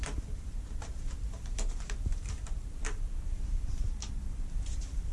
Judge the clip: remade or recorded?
remade